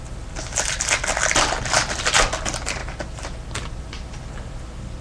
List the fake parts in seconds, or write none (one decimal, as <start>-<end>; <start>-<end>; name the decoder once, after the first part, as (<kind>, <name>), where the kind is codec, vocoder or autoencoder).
none